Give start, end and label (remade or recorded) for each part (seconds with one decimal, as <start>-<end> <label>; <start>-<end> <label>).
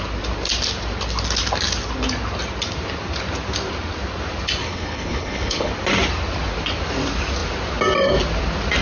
0.0-4.6 recorded; 4.6-5.7 remade; 5.7-8.8 recorded